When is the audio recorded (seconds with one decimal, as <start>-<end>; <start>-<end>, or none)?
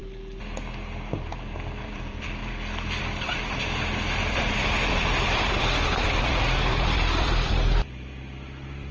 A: 0.0-1.8; 2.4-3.0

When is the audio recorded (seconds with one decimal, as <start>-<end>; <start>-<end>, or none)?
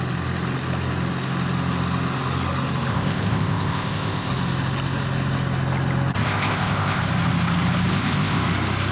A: 0.0-2.9; 4.3-6.2; 7.0-7.9; 8.4-8.9